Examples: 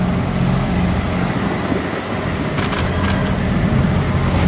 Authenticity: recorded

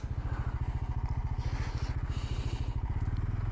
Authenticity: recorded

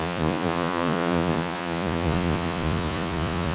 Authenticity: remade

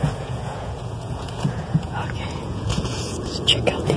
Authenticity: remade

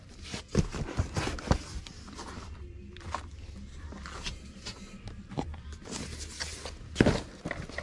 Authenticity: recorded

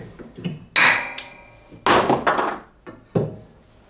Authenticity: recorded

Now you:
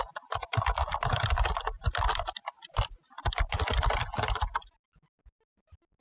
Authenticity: recorded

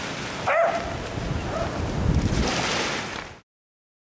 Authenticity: recorded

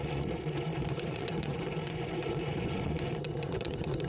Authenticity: remade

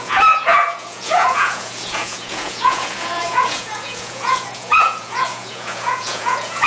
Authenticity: remade